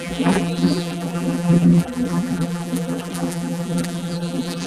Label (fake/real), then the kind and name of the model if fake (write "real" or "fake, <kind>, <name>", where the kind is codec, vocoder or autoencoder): fake, vocoder, BigVGAN v2